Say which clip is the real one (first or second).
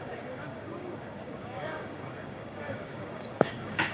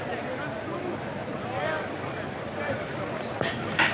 second